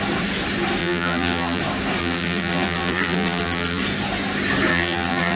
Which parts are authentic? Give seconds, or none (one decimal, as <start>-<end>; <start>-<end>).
0.0-0.8; 1.6-2.0; 3.8-4.7